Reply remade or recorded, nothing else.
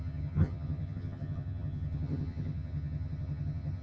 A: remade